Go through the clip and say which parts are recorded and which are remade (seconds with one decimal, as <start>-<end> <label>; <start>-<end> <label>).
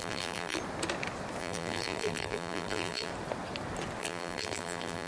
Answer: 0.0-0.6 remade; 0.6-1.4 recorded; 1.4-3.1 remade; 3.1-4.0 recorded; 4.0-5.1 remade